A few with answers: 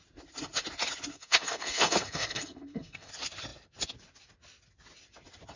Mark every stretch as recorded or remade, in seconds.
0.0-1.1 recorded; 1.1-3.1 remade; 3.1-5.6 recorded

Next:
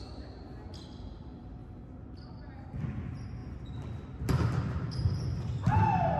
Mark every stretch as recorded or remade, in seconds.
0.0-6.2 recorded

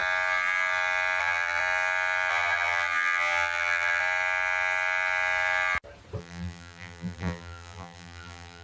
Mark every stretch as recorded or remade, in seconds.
0.0-1.2 recorded; 1.2-1.6 remade; 1.6-2.3 recorded; 2.3-4.0 remade; 4.0-6.2 recorded; 6.2-8.6 remade

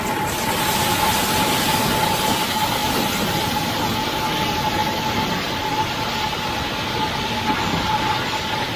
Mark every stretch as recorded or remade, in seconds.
0.0-2.8 recorded; 2.8-4.0 remade; 4.0-4.8 recorded; 4.8-6.1 remade; 6.1-8.8 recorded

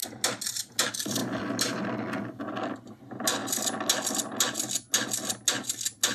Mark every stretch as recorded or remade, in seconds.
0.0-6.1 recorded

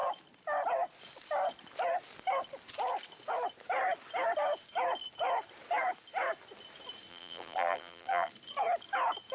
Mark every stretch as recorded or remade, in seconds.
0.0-7.1 recorded; 7.1-8.3 remade; 8.3-9.3 recorded

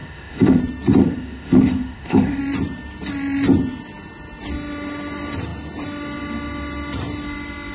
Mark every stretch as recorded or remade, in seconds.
0.0-0.6 remade; 0.6-1.0 recorded; 1.0-2.4 remade; 2.4-7.7 recorded

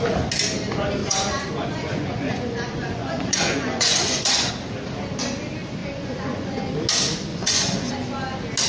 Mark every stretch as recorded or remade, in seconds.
0.0-1.0 recorded; 1.0-4.5 remade; 4.5-5.8 recorded; 5.8-6.7 remade; 6.7-7.3 recorded; 7.3-7.9 remade; 7.9-8.7 recorded